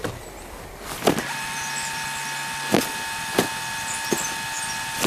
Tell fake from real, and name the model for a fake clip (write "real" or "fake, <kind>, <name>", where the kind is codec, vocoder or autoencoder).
real